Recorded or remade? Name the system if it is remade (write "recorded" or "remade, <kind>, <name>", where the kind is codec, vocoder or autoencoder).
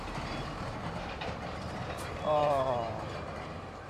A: remade, vocoder, BigVGAN v2